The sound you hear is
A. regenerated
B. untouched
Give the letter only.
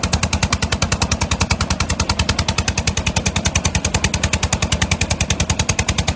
B